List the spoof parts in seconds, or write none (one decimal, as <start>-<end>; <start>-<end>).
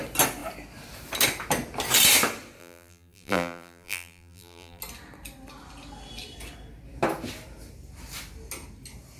2.6-4.8